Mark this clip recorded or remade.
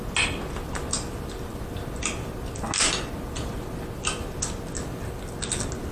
recorded